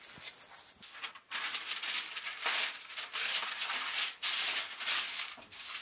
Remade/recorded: recorded